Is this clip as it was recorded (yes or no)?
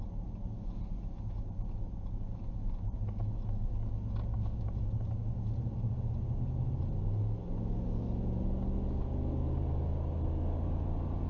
yes